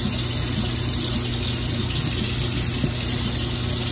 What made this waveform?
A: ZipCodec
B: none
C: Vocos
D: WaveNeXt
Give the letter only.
B